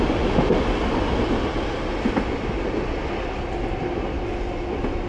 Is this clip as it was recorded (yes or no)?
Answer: yes